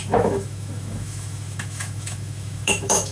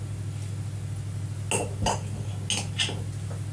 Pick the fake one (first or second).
first